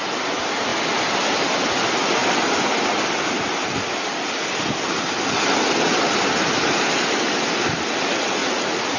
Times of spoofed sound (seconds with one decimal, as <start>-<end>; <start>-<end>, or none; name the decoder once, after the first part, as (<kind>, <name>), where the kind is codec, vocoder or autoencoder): 8.4-9.0 (vocoder, Vocos)